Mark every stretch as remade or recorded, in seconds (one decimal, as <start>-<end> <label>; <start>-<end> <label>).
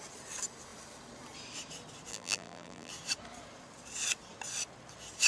0.0-2.1 recorded; 2.1-2.9 remade; 2.9-5.3 recorded